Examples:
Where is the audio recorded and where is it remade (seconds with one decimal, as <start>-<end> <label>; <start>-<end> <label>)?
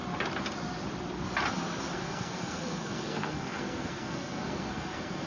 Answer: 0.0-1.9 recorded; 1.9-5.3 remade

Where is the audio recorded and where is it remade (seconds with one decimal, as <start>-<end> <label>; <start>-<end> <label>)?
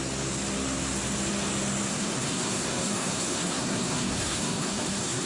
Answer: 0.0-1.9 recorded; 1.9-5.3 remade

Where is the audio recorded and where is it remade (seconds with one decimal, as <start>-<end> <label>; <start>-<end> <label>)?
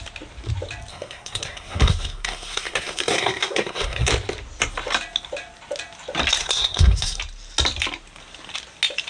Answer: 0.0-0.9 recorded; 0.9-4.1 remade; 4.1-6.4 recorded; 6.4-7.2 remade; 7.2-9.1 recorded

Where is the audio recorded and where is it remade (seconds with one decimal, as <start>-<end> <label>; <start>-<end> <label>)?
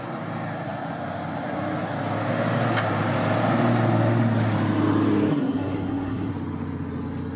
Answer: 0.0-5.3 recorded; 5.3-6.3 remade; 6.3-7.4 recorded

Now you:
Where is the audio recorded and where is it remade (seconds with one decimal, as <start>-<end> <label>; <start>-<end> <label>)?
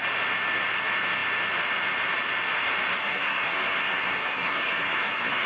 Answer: 0.0-3.0 recorded; 3.0-5.5 remade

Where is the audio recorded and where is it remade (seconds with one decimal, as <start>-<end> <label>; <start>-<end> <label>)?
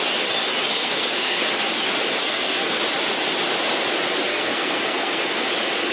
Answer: 0.0-0.7 recorded; 0.7-1.4 remade; 1.4-2.2 recorded; 2.2-2.8 remade; 2.8-4.3 recorded; 4.3-5.5 remade; 5.5-5.9 recorded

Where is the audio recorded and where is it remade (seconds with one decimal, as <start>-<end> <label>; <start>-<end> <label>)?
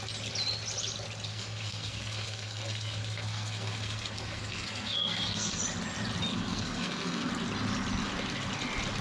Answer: 0.0-1.3 recorded; 1.3-5.6 remade; 5.6-6.3 recorded; 6.3-7.3 remade; 7.3-9.0 recorded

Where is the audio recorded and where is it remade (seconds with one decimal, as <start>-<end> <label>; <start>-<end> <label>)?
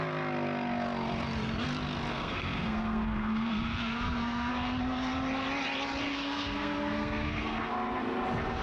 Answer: 0.0-2.1 recorded; 2.1-4.5 remade; 4.5-6.1 recorded; 6.1-7.7 remade; 7.7-8.6 recorded